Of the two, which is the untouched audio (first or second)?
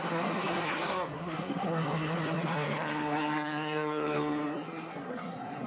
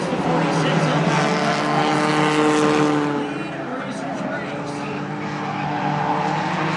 second